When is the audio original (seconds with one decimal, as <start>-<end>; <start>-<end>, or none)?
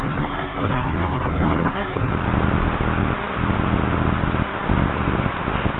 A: 2.1-5.8